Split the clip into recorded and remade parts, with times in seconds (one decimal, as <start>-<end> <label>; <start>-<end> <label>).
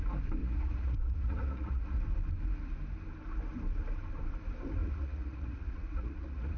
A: 0.0-0.4 recorded; 0.4-2.0 remade; 2.0-4.8 recorded; 4.8-6.6 remade